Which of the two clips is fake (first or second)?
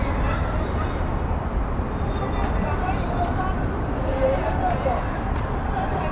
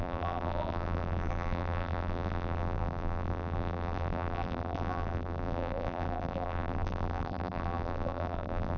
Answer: second